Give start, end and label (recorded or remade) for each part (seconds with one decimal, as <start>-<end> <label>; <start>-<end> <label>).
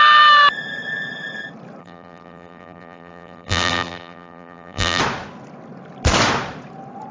0.0-1.8 recorded; 1.8-5.0 remade; 5.0-7.1 recorded